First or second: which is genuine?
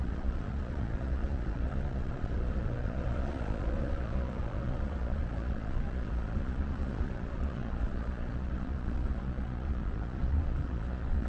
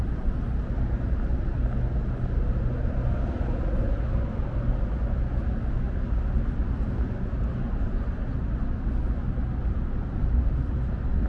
second